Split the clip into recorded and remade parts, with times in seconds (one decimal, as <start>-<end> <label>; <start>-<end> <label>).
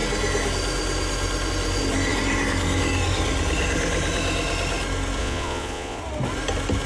0.0-5.2 recorded; 5.2-6.0 remade; 6.0-6.9 recorded